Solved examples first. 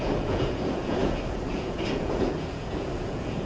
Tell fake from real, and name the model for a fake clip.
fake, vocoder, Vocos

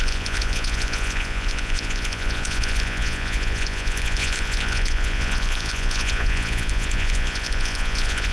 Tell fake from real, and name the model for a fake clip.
fake, vocoder, Vocos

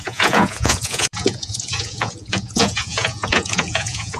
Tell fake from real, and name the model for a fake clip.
fake, vocoder, Vocos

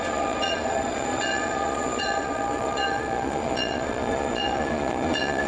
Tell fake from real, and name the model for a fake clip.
fake, vocoder, Vocos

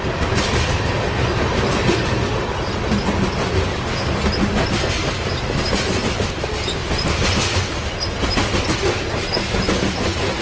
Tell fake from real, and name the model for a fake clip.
real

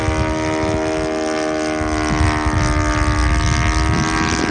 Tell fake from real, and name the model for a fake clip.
real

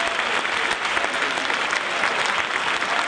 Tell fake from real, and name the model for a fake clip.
real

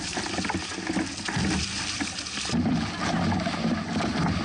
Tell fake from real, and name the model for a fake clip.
real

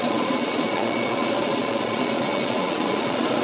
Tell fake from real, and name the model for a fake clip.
fake, vocoder, Vocos